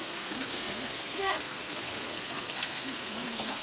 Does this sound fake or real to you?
fake